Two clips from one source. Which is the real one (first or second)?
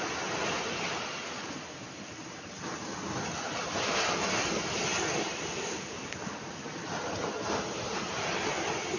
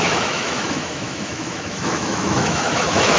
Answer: first